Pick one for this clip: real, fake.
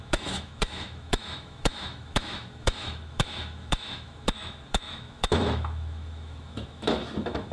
fake